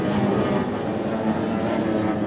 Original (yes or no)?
yes